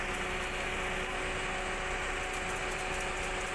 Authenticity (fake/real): real